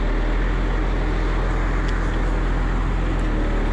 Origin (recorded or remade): recorded